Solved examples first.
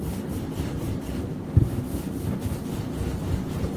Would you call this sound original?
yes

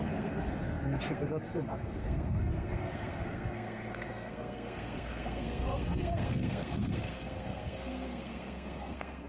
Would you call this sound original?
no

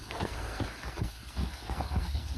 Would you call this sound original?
no